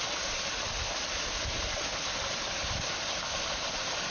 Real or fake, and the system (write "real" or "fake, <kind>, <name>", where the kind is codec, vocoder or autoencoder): fake, vocoder, BigVGAN v2